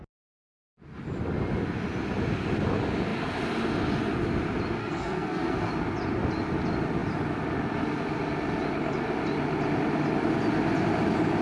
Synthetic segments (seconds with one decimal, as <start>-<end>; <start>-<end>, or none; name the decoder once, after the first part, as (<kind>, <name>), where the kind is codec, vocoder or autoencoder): 4.8-5.7 (codec, SNAC)